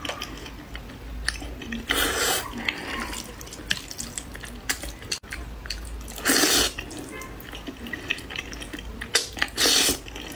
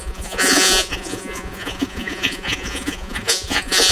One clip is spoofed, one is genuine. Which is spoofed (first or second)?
second